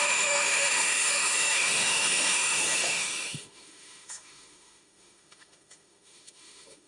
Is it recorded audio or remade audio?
remade